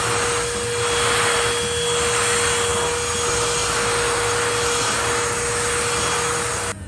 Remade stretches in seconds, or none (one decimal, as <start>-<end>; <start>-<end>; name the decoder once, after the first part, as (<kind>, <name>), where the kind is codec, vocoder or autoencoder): none